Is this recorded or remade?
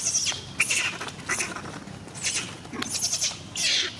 recorded